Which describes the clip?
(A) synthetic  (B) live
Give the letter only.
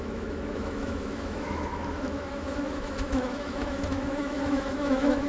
A